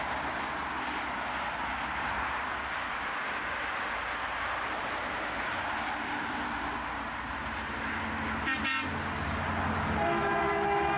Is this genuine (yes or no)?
yes